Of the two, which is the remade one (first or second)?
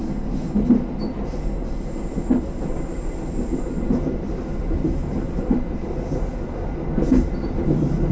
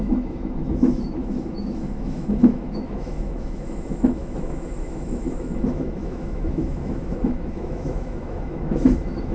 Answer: second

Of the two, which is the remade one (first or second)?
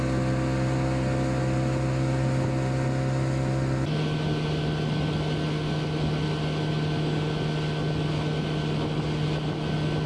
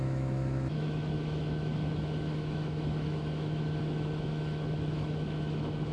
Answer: second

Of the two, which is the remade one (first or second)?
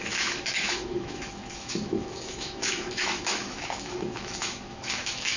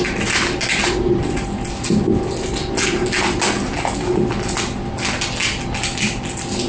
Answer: first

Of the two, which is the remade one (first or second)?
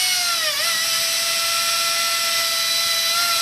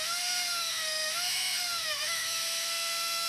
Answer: second